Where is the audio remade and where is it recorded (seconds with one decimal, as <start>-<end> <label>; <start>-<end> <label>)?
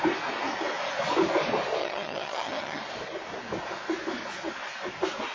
0.0-1.8 recorded; 1.8-2.8 remade; 2.8-5.3 recorded